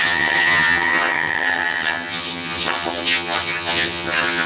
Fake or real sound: fake